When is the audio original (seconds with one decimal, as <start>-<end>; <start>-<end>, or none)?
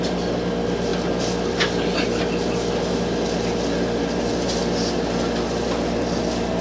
0.0-6.6